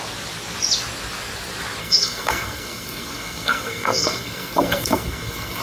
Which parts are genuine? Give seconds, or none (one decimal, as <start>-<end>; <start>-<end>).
0.0-1.8